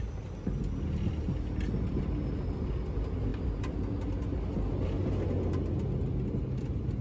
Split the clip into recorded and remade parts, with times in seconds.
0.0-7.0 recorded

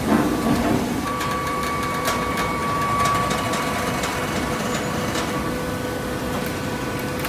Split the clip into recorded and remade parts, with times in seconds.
0.0-2.6 remade; 2.6-6.2 recorded; 6.2-7.3 remade